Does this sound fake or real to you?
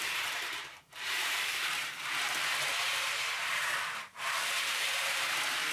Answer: fake